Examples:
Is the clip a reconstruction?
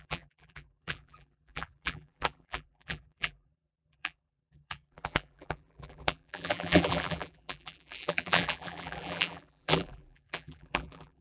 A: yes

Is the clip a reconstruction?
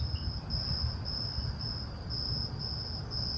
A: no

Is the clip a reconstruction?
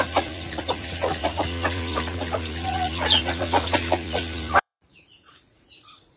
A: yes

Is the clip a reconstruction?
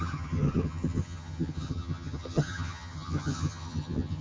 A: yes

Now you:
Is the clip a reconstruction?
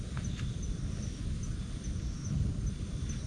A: no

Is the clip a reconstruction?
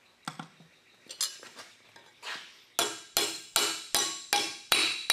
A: no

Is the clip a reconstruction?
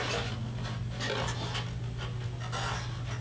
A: no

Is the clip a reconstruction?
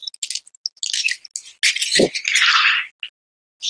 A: no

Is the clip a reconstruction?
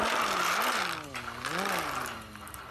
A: no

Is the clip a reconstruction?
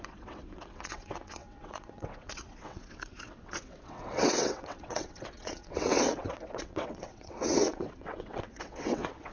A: yes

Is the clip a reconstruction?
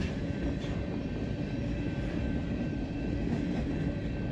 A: yes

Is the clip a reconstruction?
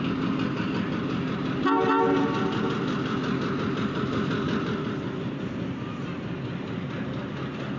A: no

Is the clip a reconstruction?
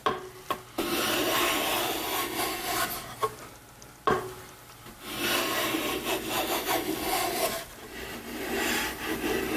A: yes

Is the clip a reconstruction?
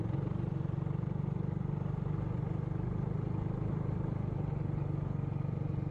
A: no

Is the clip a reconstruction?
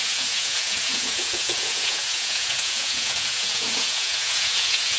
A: yes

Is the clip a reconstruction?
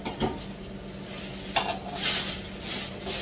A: no